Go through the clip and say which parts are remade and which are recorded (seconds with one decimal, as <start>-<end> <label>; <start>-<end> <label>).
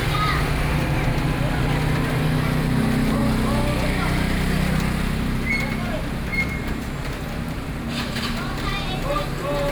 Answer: 0.0-6.3 recorded; 6.3-8.9 remade; 8.9-9.7 recorded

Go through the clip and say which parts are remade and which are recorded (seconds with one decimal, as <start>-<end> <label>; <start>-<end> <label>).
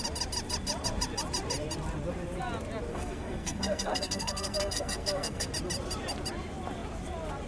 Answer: 0.0-2.9 recorded; 2.9-5.5 remade; 5.5-7.5 recorded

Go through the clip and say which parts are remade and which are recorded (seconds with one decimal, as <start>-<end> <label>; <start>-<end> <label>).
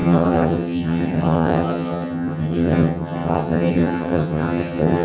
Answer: 0.0-5.0 remade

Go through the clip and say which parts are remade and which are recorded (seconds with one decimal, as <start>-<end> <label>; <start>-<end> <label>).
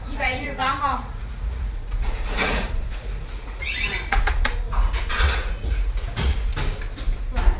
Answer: 0.0-6.5 remade; 6.5-7.6 recorded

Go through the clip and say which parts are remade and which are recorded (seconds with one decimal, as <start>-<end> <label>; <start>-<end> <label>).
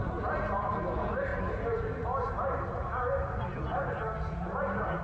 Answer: 0.0-5.0 recorded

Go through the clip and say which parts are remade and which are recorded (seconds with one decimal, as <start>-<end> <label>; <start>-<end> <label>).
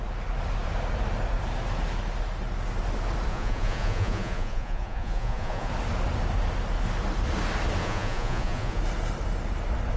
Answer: 0.0-3.3 recorded; 3.3-5.7 remade; 5.7-7.8 recorded; 7.8-8.8 remade; 8.8-10.0 recorded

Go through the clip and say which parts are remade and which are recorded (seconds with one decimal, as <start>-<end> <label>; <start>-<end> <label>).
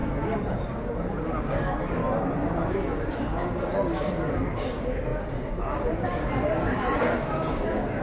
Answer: 0.0-2.0 remade; 2.0-2.7 recorded; 2.7-8.0 remade